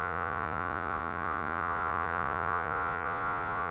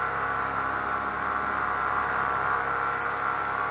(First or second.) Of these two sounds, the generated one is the first